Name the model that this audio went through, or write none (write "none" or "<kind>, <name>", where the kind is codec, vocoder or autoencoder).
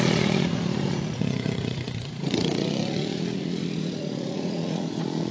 vocoder, Vocos